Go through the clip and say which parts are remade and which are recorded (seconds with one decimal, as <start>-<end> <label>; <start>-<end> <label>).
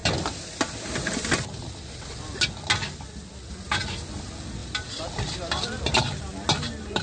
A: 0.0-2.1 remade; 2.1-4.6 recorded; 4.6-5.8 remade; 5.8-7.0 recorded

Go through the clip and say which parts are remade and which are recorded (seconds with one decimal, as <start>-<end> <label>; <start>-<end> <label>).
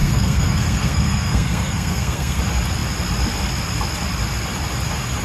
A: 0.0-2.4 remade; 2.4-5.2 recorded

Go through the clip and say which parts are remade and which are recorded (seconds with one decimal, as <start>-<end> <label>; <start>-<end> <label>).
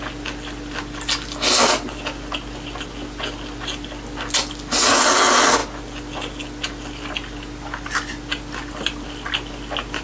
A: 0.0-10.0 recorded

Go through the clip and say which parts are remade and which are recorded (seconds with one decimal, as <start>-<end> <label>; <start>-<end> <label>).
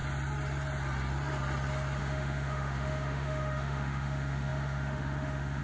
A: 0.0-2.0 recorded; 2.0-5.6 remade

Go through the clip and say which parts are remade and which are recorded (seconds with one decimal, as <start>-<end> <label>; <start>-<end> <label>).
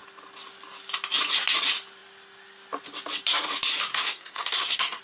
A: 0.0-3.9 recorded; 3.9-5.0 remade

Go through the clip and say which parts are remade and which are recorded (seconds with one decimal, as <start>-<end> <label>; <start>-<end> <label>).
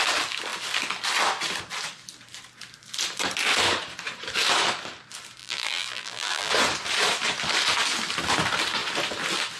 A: 0.0-5.4 recorded; 5.4-6.5 remade; 6.5-9.6 recorded